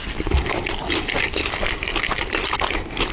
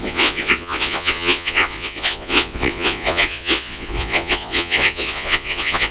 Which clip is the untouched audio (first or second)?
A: first